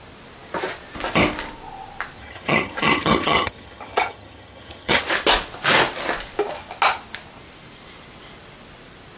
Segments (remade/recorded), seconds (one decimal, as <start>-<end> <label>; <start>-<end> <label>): 0.0-2.2 recorded; 2.2-5.0 remade; 5.0-9.2 recorded